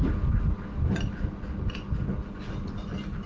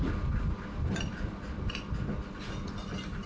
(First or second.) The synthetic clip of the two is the second